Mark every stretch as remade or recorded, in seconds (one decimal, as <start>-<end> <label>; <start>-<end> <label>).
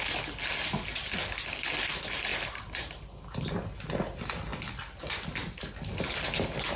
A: 0.0-2.3 recorded; 2.3-3.5 remade; 3.5-6.8 recorded